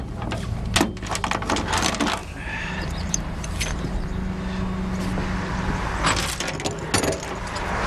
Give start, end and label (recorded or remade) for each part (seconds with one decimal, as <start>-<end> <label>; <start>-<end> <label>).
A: 0.0-2.2 recorded; 2.2-4.0 remade; 4.0-7.9 recorded